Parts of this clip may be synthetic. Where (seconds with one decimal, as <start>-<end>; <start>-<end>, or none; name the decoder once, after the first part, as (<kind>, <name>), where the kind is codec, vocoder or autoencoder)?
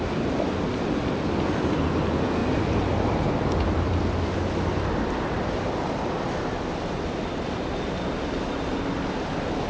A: 2.4-5.9 (vocoder, BigVGAN v2)